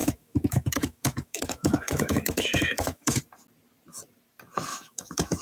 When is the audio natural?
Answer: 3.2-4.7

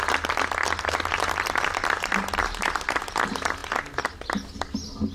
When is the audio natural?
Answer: 0.0-5.1

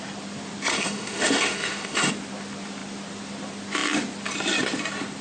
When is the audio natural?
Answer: 0.0-0.7; 2.1-5.2

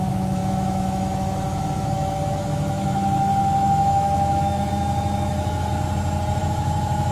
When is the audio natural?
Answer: 5.7-6.4

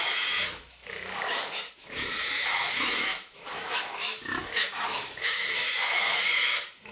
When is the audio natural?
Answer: none